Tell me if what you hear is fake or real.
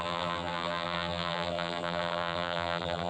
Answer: fake